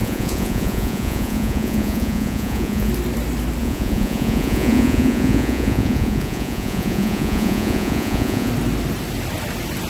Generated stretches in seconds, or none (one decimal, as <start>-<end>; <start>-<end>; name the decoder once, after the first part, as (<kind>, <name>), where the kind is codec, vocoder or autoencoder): 0.0-2.9 (vocoder, Vocos); 3.6-8.5